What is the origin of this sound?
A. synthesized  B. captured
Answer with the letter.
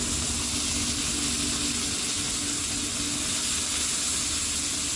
B